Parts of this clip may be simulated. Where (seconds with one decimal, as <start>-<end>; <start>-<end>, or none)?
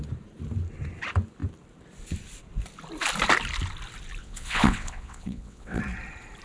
4.2-5.8